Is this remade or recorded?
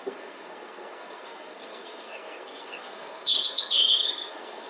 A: remade